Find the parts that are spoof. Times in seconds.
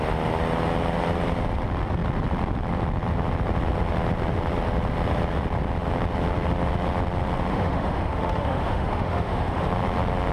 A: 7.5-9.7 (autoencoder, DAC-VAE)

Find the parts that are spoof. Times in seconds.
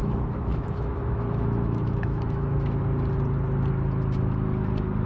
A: 0.0-2.8 (autoencoder, DAC-VAE)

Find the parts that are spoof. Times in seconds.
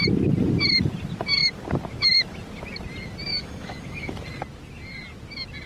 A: 3.3-4.1 (autoencoder, DAC-VAE)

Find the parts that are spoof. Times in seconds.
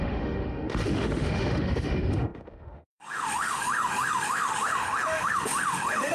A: 0.0-6.1 (autoencoder, DAC-VAE)